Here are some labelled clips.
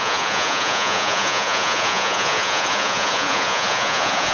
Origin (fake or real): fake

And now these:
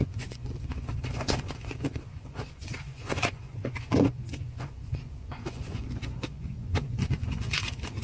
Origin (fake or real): fake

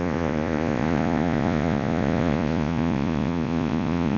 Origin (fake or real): fake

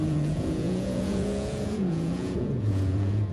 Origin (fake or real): fake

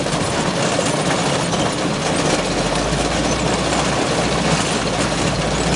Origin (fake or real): real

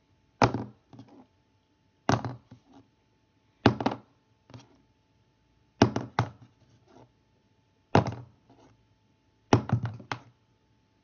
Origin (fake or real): real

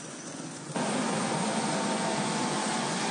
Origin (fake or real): fake